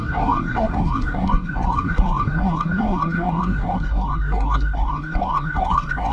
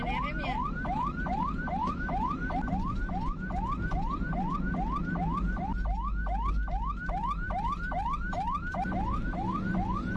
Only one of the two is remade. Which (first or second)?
first